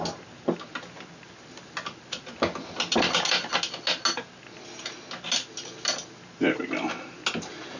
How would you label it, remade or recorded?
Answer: recorded